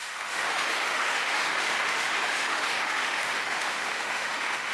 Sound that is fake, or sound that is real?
fake